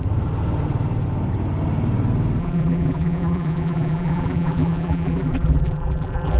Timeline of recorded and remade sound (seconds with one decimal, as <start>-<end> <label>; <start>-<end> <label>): 0.0-2.4 recorded; 2.4-6.4 remade